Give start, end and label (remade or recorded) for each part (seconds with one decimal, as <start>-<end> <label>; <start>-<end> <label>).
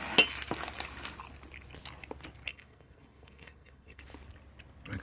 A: 0.0-2.5 recorded; 2.5-4.0 remade; 4.0-5.0 recorded